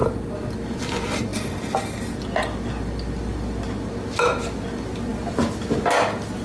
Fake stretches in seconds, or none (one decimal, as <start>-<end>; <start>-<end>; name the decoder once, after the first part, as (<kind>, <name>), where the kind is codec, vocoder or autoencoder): none